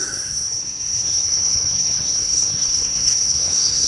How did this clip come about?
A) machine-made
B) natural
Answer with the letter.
A